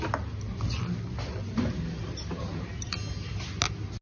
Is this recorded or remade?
recorded